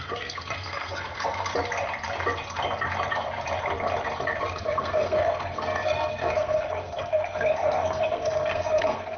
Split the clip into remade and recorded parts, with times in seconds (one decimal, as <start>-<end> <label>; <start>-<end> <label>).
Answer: 0.0-1.5 remade; 1.5-4.4 recorded; 4.4-9.2 remade